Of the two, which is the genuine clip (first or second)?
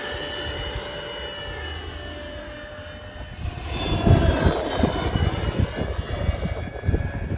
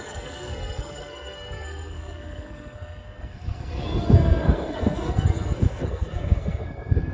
first